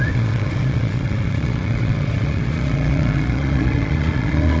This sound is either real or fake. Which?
fake